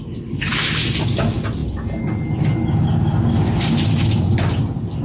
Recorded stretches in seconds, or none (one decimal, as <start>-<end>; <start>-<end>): 0.0-5.0